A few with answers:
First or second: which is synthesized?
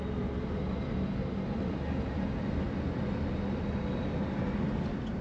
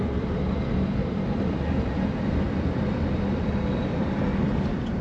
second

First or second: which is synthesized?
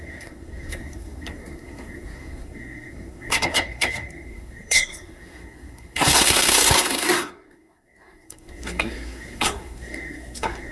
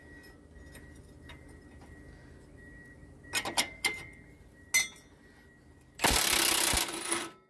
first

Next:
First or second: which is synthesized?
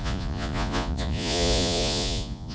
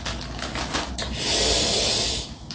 first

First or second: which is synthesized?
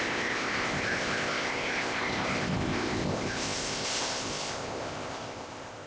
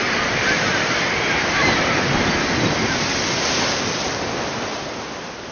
first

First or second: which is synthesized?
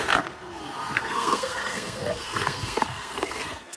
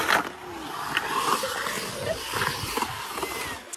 first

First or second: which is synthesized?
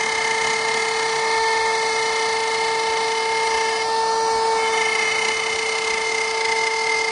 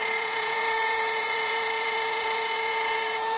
second